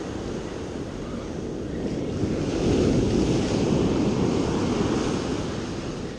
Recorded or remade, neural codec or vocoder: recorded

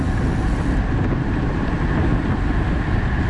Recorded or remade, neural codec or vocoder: recorded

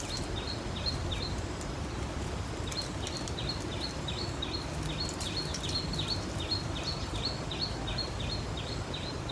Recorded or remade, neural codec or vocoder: recorded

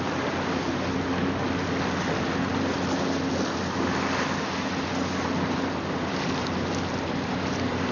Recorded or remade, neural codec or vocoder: recorded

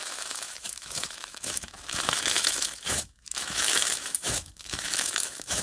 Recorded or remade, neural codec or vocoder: remade, autoencoder, DAC-VAE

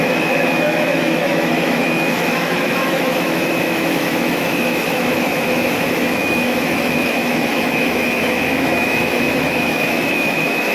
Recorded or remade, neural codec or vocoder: remade, autoencoder, DAC-VAE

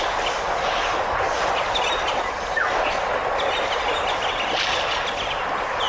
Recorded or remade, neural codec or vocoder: recorded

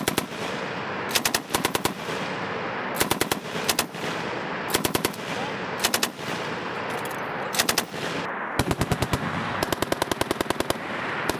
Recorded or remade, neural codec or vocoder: recorded